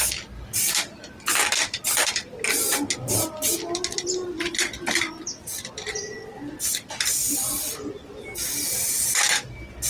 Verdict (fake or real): real